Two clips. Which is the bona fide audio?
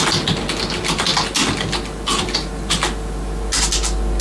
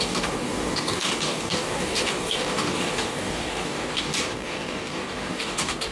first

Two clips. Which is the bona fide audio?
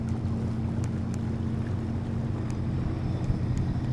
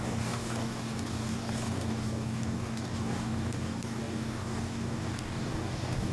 first